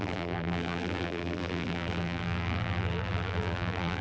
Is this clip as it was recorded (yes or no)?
no